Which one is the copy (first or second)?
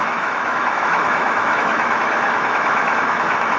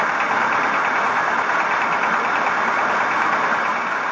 first